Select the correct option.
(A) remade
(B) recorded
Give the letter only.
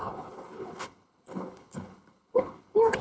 A